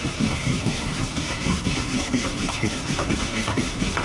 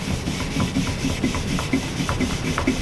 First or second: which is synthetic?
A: first